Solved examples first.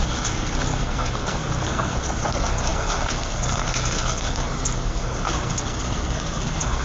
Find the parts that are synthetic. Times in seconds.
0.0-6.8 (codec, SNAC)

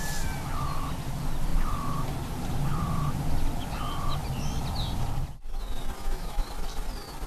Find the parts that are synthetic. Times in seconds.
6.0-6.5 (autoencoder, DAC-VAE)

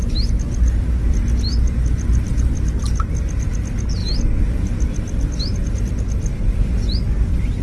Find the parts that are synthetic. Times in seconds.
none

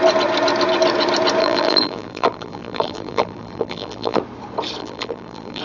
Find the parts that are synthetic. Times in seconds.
1.4-4.2 (vocoder, BigVGAN v2); 4.8-5.6